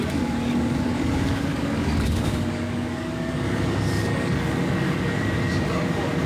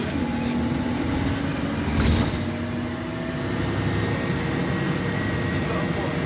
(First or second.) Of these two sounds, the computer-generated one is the first